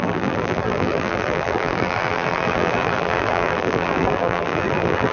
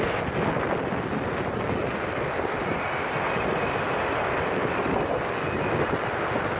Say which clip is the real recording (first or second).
second